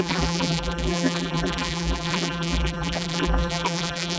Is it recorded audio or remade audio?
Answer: remade